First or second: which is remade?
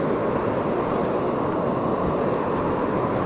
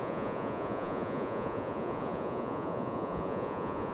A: second